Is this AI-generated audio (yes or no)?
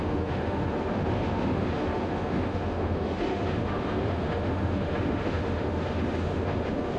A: yes